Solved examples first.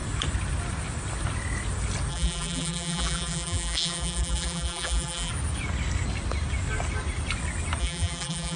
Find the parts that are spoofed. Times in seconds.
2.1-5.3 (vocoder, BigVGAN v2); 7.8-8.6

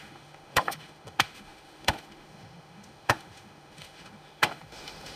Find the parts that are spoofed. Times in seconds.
0.0-5.2 (autoencoder, DAC-VAE)

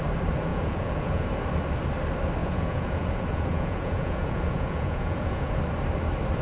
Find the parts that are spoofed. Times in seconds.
0.5-1.2 (vocoder, Vocos); 2.4-5.6

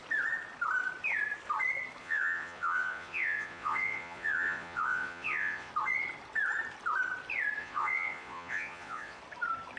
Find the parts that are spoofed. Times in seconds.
2.0-5.7 (vocoder, Vocos); 7.6-9.2

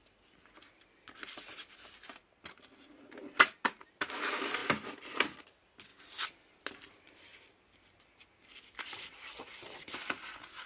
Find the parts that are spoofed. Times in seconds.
none

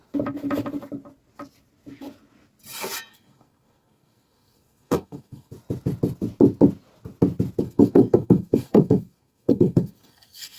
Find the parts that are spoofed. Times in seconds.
3.1-5.5 (codec, SNAC); 7.6-10.6

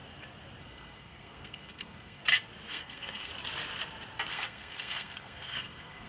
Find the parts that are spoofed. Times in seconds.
0.6-2.2 (codec, SNAC); 2.7-3.3; 4.3-6.1